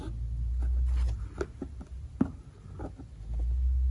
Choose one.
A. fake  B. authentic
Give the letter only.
B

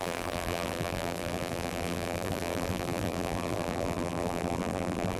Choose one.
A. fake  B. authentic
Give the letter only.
A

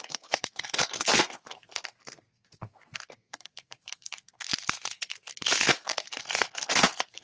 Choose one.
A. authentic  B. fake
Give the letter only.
B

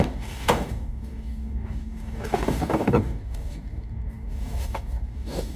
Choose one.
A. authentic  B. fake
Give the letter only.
B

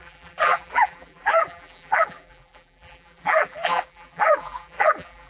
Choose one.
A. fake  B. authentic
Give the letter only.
A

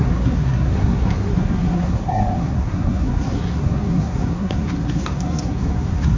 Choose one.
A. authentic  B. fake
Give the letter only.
B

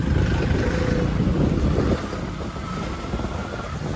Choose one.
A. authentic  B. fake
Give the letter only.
A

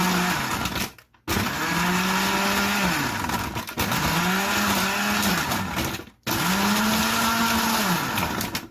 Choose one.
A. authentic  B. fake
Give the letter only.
A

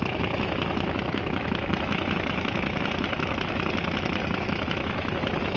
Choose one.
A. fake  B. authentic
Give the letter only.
A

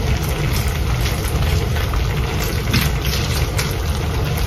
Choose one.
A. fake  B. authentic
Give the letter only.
B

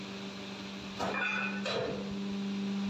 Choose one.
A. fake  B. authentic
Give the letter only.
B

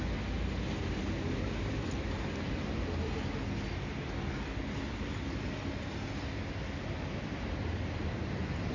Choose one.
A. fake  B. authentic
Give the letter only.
B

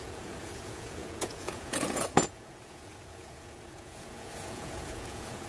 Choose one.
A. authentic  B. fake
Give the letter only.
B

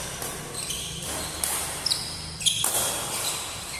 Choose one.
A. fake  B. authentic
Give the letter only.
B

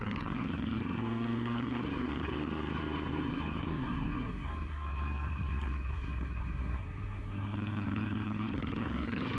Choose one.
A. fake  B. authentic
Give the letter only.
A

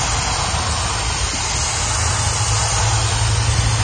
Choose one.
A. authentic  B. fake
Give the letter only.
A